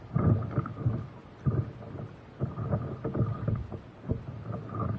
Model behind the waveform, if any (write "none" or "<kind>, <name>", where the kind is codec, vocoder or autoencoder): none